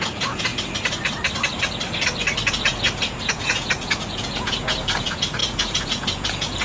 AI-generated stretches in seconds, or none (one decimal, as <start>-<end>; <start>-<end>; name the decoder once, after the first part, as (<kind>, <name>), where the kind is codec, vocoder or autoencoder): 0.0-0.5 (vocoder, Vocos); 2.6-6.6